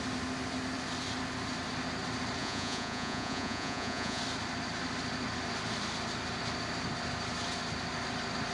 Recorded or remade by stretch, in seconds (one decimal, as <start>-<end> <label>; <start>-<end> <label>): 0.0-2.4 recorded; 2.4-4.2 remade; 4.2-8.5 recorded